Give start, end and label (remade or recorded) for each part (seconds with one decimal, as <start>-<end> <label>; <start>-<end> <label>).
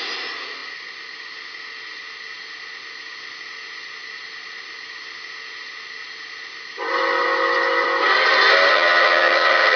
0.0-8.7 recorded; 8.7-9.8 remade